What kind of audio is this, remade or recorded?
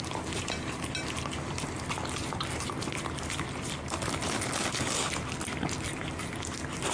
recorded